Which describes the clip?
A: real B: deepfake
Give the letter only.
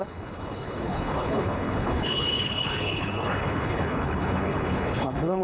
B